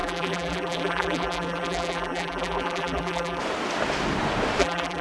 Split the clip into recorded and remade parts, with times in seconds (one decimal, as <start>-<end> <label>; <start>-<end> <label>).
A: 0.0-3.4 remade; 3.4-4.6 recorded; 4.6-5.0 remade